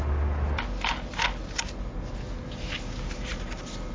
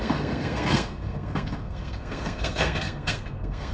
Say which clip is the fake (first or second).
second